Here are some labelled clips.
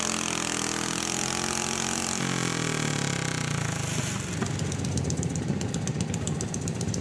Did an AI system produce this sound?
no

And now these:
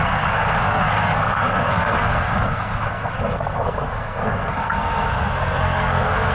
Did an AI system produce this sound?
yes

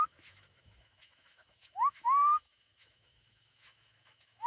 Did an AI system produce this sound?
yes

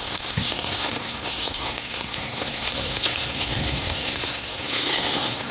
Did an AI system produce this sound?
yes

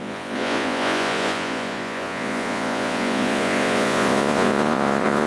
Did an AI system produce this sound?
yes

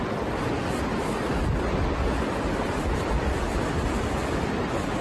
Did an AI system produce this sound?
no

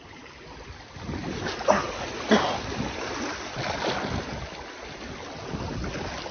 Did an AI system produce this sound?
no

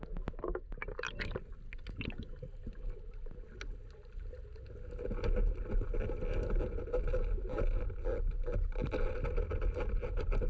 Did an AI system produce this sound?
no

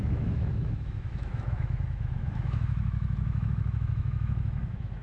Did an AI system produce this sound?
yes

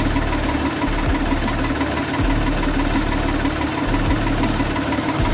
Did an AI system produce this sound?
no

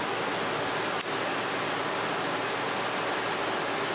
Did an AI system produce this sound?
no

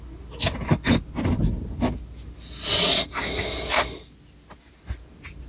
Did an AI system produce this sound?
no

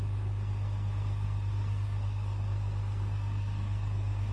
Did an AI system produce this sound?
yes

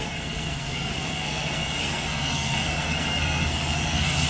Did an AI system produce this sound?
yes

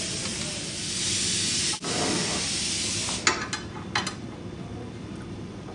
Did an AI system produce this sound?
no